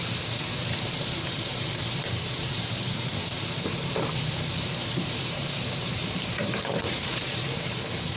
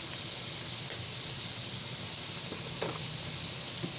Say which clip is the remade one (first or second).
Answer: first